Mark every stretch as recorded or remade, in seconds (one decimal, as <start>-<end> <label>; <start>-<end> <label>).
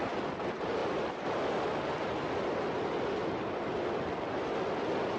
0.0-0.8 recorded; 0.8-3.9 remade; 3.9-5.2 recorded